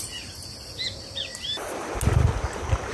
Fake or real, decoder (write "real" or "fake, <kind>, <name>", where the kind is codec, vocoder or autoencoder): real